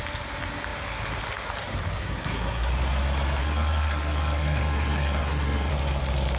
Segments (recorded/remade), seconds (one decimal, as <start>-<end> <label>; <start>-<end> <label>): 0.0-2.0 recorded; 2.0-2.7 remade; 2.7-3.4 recorded; 3.4-5.7 remade; 5.7-6.4 recorded